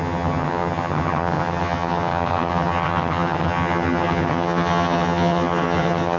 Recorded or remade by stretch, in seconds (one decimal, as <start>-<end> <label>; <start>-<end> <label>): 0.0-6.2 remade